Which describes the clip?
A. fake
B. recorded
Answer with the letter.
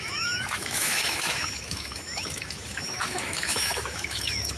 A